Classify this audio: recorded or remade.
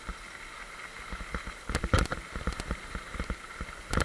recorded